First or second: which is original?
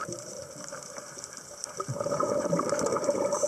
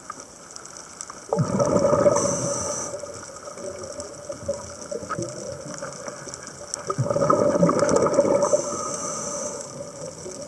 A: second